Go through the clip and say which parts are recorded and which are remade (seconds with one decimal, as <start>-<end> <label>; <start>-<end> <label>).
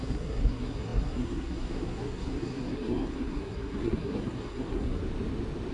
0.0-5.0 remade; 5.0-5.7 recorded